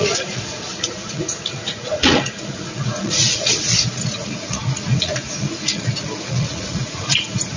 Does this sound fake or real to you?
fake